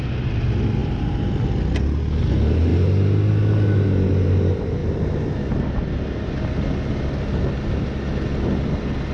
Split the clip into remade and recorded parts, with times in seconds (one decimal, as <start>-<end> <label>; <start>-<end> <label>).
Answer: 0.0-9.1 recorded